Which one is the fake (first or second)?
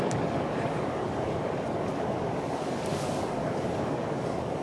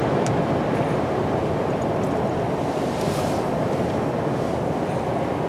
first